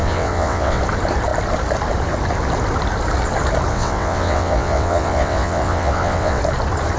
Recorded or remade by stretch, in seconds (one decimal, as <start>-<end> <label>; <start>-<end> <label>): 0.0-0.8 remade; 0.8-3.7 recorded; 3.7-6.4 remade; 6.4-7.0 recorded